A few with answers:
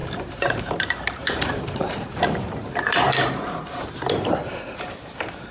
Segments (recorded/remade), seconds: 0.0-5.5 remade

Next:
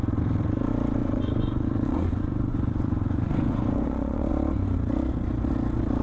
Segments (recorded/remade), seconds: 0.0-1.0 recorded; 1.0-4.2 remade; 4.2-6.0 recorded

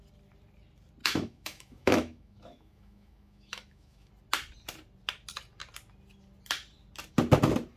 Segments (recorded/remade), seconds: 0.0-1.0 recorded; 1.0-4.1 remade; 4.1-7.8 recorded